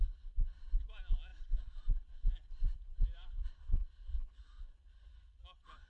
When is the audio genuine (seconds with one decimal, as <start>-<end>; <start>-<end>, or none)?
0.0-1.3; 3.7-5.9